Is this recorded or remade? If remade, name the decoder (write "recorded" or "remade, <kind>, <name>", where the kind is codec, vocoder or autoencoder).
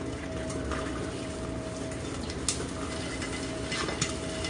recorded